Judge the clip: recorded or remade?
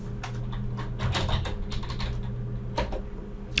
recorded